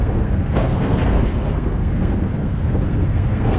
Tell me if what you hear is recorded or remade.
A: remade